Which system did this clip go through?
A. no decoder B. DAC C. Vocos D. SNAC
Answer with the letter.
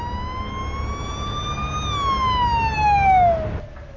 A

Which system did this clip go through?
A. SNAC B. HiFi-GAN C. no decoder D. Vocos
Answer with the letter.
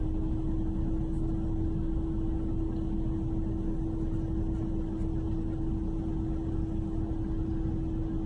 C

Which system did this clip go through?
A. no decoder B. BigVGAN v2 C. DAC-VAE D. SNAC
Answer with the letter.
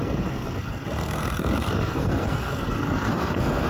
D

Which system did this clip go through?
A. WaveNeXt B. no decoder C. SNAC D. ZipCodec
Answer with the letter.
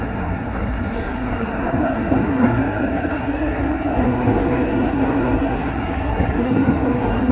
C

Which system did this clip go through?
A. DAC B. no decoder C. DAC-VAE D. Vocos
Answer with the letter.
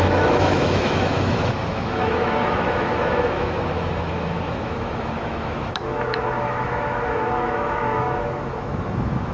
C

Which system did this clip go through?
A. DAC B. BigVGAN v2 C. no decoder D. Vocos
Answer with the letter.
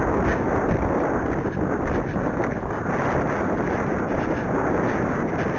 C